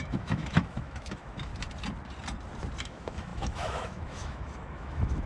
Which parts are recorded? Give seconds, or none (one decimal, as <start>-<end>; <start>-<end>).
1.5-2.8